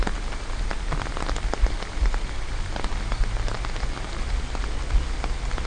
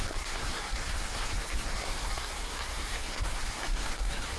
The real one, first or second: first